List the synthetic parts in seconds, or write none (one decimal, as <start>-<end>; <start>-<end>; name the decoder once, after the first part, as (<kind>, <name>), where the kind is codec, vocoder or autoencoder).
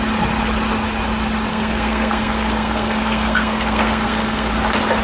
1.5-4.5 (codec, SNAC)